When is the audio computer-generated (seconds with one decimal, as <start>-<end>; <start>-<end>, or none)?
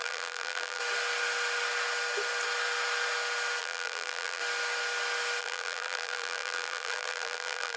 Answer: 0.0-0.8; 3.6-4.4; 5.4-7.8